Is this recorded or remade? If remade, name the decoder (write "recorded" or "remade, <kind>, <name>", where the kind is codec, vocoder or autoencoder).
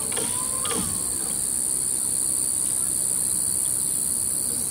recorded